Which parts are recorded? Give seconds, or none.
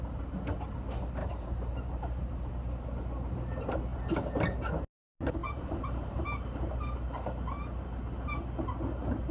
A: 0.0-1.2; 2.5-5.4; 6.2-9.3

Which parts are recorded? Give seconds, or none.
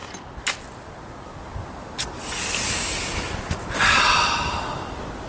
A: 0.0-5.3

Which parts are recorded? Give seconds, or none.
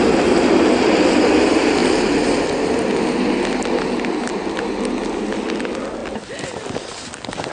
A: 0.0-7.5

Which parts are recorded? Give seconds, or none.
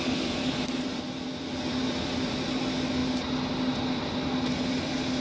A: 0.0-5.2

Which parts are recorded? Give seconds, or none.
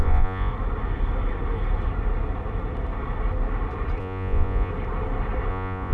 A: 0.5-4.0; 4.7-5.5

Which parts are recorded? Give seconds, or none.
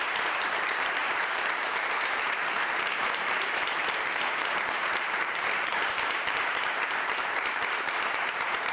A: none